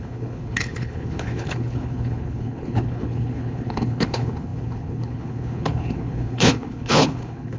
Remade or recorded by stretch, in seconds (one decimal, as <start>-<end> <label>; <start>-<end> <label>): 0.0-7.6 remade

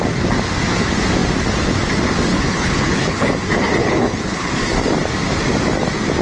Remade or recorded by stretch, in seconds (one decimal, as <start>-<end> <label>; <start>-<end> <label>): 0.0-2.3 recorded; 2.3-3.3 remade; 3.3-3.8 recorded; 3.8-4.6 remade; 4.6-6.2 recorded

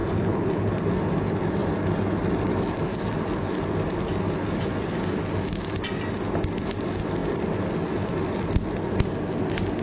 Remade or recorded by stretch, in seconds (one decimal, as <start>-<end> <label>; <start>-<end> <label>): 0.0-0.7 remade; 0.7-9.8 recorded

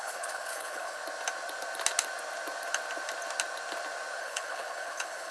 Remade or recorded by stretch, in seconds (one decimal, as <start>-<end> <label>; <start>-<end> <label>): 0.0-1.0 remade; 1.0-4.2 recorded; 4.2-5.3 remade

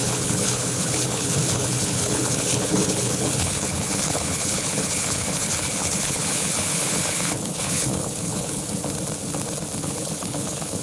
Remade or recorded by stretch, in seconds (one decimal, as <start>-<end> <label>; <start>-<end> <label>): 0.0-8.8 remade; 8.8-9.8 recorded; 9.8-10.8 remade

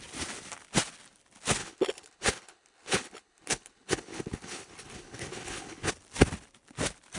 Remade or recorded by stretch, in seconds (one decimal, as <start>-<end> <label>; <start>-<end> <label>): 0.0-1.6 recorded; 1.6-5.9 remade; 5.9-7.2 recorded

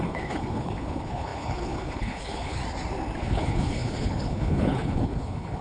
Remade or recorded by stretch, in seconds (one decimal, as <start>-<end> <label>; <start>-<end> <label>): 0.0-2.6 remade; 2.6-3.2 recorded; 3.2-5.6 remade